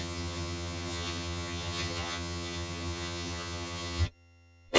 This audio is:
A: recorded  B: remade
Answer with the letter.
B